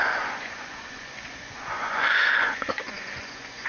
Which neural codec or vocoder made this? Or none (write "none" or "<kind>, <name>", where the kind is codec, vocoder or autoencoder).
vocoder, Vocos